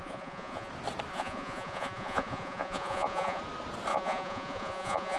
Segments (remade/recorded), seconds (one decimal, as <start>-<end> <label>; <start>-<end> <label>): 0.0-0.7 remade; 0.7-1.1 recorded; 1.1-3.4 remade; 3.4-3.9 recorded; 3.9-5.2 remade